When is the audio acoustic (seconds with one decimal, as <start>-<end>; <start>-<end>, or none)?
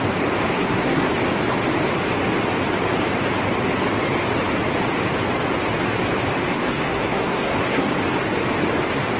0.0-0.5; 1.1-6.5; 7.9-9.2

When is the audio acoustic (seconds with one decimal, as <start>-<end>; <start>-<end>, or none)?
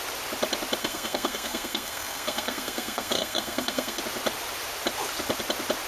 0.0-0.8; 4.0-5.9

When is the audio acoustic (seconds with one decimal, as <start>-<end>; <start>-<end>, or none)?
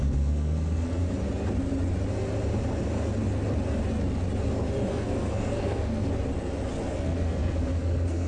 1.0-4.9; 6.1-6.9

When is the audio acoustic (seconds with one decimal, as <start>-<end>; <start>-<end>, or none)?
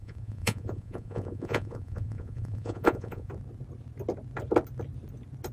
3.3-5.5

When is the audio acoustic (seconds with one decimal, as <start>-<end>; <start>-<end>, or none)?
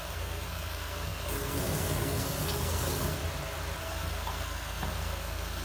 3.2-3.8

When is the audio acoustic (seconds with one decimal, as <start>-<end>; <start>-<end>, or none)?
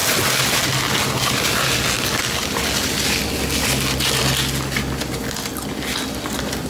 0.0-6.7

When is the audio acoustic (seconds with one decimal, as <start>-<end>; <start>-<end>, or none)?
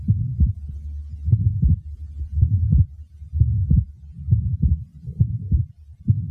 0.0-4.9; 5.8-6.3